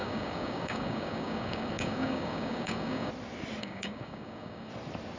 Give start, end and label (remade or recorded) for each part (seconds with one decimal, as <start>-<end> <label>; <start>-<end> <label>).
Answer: 0.0-3.1 remade; 3.1-3.6 recorded; 3.6-4.7 remade; 4.7-5.2 recorded